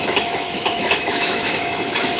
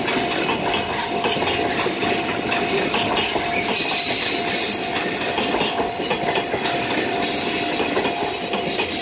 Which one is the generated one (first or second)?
first